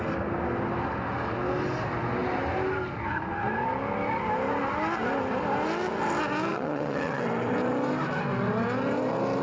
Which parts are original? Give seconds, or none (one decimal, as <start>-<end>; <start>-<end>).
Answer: 0.0-6.5; 7.2-9.4